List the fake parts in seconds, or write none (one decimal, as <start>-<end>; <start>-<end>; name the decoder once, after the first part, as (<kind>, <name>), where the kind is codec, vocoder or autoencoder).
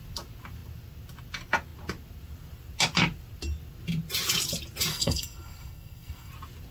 4.9-6.3 (codec, SNAC)